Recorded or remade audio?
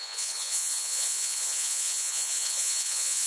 remade